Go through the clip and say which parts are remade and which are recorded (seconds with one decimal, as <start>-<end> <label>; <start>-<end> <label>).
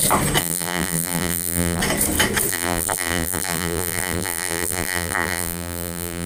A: 0.0-0.4 recorded; 0.4-1.8 remade; 1.8-2.5 recorded; 2.5-6.3 remade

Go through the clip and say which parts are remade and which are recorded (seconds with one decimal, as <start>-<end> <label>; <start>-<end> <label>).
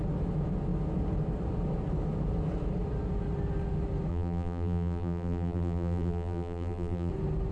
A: 0.0-4.1 recorded; 4.1-7.1 remade; 7.1-7.5 recorded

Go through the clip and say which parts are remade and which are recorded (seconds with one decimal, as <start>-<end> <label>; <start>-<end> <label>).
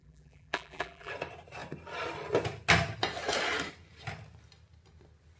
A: 0.0-1.1 remade; 1.1-5.4 recorded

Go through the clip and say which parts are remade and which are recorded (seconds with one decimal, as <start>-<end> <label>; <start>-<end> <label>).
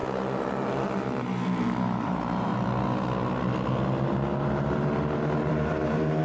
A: 0.0-1.8 recorded; 1.8-2.5 remade; 2.5-5.5 recorded; 5.5-6.2 remade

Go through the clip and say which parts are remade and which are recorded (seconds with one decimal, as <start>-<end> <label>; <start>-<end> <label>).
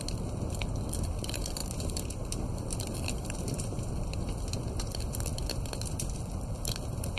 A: 0.0-1.6 recorded; 1.6-3.9 remade; 3.9-7.2 recorded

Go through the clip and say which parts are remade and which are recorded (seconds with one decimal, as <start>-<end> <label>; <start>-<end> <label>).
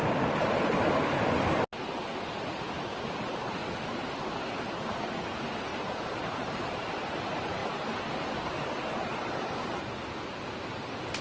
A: 0.0-3.6 recorded; 3.6-4.4 remade; 4.4-5.7 recorded; 5.7-7.1 remade; 7.1-11.2 recorded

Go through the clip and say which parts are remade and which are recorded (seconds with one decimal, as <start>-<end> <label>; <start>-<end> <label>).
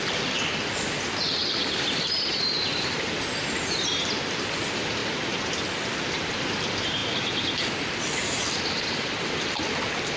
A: 0.0-1.6 recorded; 1.6-4.0 remade; 4.0-10.2 recorded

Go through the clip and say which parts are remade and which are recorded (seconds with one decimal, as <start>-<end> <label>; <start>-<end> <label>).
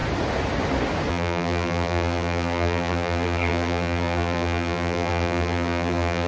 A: 0.0-1.1 recorded; 1.1-6.3 remade